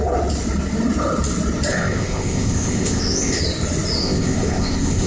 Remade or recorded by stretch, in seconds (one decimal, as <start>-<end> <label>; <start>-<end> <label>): 0.0-1.7 recorded; 1.7-3.4 remade; 3.4-4.0 recorded; 4.0-5.1 remade